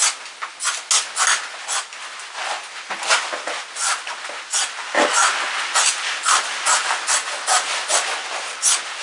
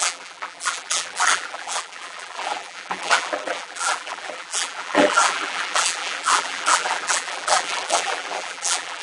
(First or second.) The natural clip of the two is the first